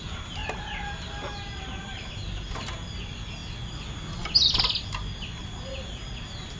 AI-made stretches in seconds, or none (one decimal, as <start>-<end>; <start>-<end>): none